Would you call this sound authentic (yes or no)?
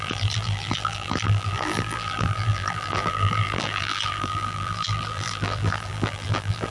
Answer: no